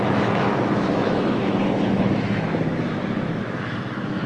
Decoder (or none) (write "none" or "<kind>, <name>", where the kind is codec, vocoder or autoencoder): autoencoder, DAC-VAE